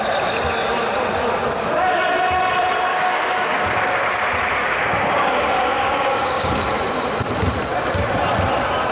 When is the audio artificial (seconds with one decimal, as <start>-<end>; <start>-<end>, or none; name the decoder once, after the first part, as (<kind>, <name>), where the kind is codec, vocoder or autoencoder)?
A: 2.9-3.7 (codec, DAC); 4.6-6.5